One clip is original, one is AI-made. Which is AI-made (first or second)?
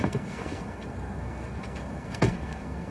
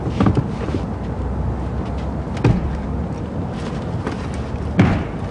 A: first